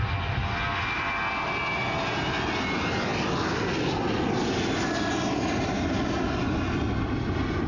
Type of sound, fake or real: real